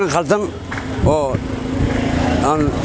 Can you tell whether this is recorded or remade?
recorded